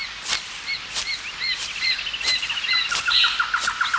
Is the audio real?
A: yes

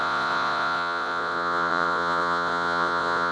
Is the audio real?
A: no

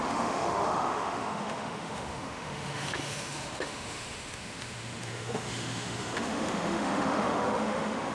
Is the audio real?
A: no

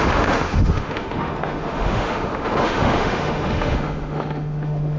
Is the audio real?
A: no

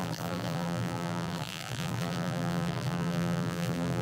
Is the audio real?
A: no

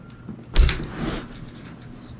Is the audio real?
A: yes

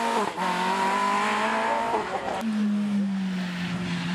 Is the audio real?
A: yes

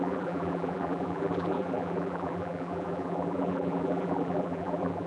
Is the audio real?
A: no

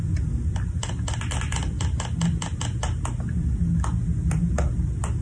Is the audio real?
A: yes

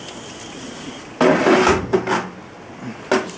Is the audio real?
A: yes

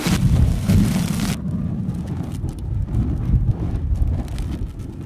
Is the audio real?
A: yes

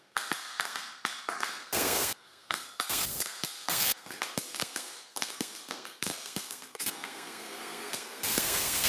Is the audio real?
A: no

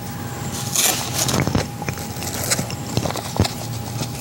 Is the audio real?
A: yes